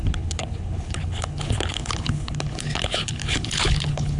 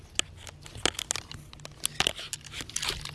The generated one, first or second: first